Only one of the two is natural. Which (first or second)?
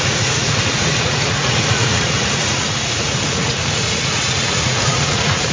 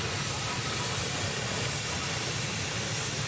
second